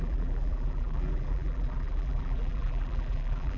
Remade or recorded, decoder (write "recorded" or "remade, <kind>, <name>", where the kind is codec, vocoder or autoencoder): remade, vocoder, BigVGAN v2